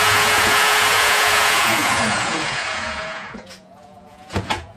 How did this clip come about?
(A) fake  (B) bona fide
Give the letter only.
A